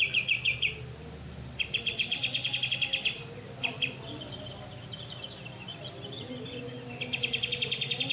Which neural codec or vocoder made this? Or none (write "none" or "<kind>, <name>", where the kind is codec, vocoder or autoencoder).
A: none